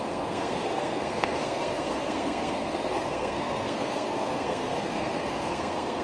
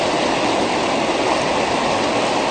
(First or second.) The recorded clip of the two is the second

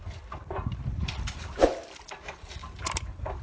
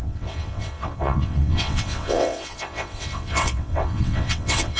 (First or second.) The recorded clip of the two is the first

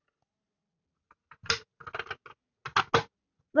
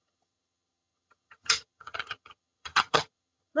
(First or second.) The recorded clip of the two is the first